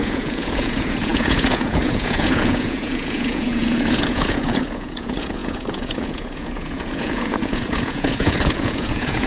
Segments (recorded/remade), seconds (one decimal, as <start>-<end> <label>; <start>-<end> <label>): 0.0-9.3 remade